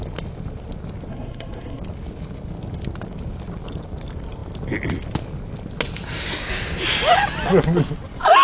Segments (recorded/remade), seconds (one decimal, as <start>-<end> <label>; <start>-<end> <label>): 0.0-1.1 recorded; 1.1-1.8 remade; 1.8-8.4 recorded